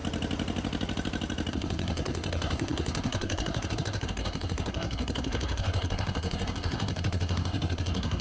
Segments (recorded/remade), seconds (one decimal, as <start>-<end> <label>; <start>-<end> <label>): 0.0-1.5 recorded; 1.5-8.2 remade